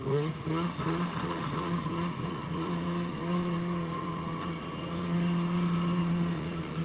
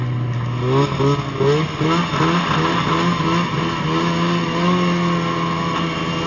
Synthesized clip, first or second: first